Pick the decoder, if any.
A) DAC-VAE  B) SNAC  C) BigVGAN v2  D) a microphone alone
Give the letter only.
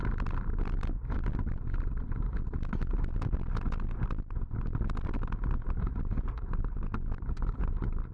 D